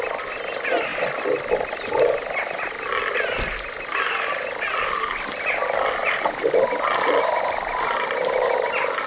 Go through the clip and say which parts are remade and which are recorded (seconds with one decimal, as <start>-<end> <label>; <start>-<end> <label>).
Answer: 0.0-9.1 recorded